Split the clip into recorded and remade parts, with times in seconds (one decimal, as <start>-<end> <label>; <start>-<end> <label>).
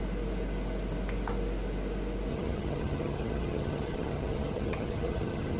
0.0-2.3 recorded; 2.3-5.6 remade